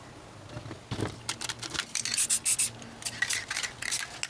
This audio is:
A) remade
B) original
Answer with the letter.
B